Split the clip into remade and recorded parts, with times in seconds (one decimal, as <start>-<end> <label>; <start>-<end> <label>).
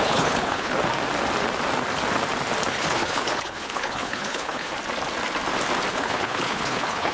0.0-0.8 remade; 0.8-2.7 recorded; 2.7-4.7 remade; 4.7-5.9 recorded; 5.9-7.1 remade